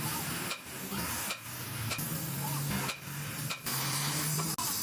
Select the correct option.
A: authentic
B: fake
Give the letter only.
A